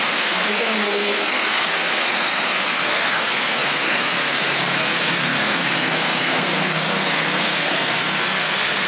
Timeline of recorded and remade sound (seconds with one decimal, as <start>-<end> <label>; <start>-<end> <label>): 0.0-8.9 remade